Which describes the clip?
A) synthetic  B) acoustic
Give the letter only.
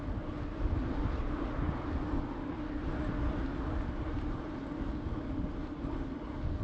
B